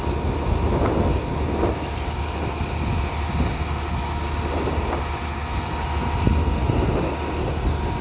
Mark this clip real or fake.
real